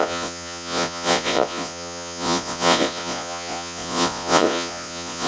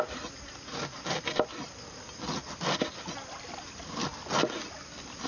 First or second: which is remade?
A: first